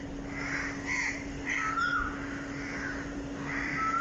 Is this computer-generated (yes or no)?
yes